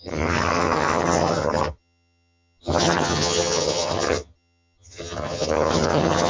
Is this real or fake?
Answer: fake